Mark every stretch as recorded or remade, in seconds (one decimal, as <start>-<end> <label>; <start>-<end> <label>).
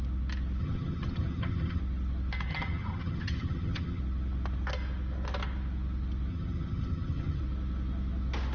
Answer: 0.0-0.6 recorded; 0.6-1.8 remade; 1.8-2.5 recorded; 2.5-4.0 remade; 4.0-6.3 recorded; 6.3-7.4 remade; 7.4-8.5 recorded